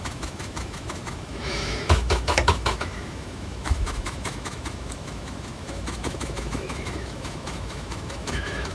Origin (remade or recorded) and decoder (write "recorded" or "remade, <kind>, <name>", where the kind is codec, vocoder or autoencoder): remade, autoencoder, DAC-VAE